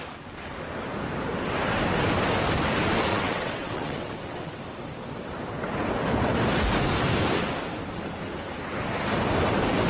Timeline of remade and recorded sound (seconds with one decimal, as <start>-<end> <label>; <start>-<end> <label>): 0.0-3.1 recorded; 3.1-4.6 remade; 4.6-9.9 recorded